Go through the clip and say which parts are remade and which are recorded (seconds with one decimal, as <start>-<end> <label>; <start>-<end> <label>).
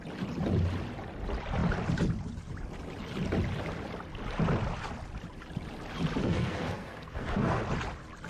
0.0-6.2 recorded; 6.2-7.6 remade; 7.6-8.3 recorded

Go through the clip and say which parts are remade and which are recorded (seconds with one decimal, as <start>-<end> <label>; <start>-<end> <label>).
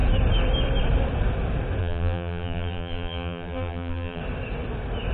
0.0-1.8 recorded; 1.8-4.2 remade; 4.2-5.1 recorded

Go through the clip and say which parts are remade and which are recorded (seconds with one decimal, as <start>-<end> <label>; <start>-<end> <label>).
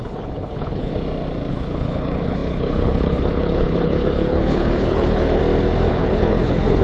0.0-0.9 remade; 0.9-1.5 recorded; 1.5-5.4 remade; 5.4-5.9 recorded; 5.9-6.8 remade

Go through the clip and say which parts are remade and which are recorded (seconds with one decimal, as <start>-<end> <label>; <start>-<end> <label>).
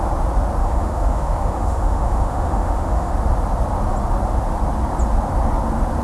0.0-0.6 recorded; 0.6-3.1 remade; 3.1-6.0 recorded